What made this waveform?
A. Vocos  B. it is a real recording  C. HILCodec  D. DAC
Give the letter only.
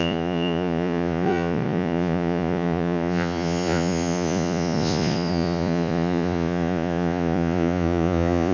A